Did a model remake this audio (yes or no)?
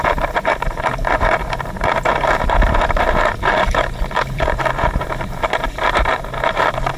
yes